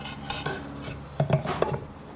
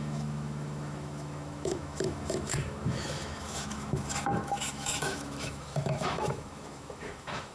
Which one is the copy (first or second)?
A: second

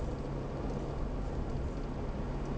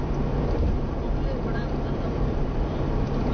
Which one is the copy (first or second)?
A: second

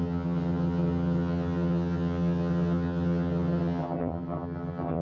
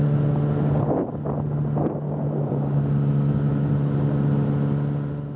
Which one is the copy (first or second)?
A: first